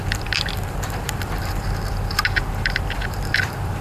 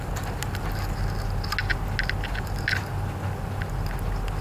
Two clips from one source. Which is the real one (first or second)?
second